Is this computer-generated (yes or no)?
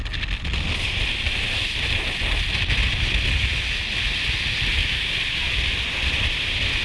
no